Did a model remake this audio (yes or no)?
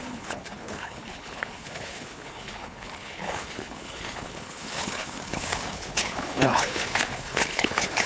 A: yes